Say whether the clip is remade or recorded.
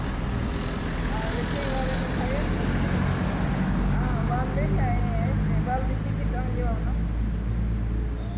recorded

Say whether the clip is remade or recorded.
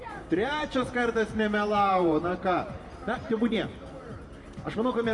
remade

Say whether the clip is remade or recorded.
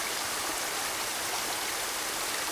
recorded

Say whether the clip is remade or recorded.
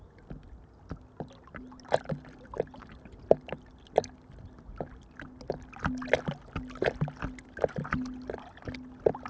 recorded